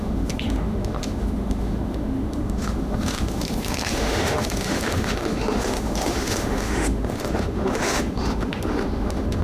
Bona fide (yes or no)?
no